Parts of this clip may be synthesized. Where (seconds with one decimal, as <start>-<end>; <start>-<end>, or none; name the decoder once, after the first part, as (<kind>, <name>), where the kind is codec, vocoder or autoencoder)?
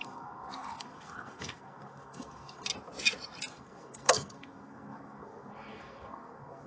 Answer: 0.0-2.7 (codec, SNAC); 3.5-6.7